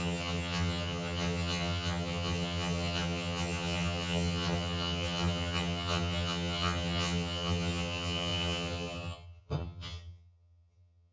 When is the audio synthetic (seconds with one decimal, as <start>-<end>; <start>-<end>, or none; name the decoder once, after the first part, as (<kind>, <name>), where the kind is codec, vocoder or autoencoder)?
0.0-11.1 (vocoder, HiFi-GAN)